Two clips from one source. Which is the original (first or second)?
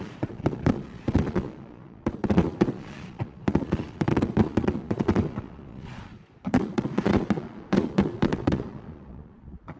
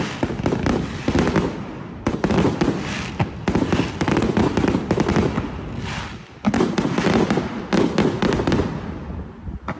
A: second